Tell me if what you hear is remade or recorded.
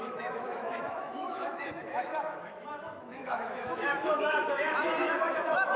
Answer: remade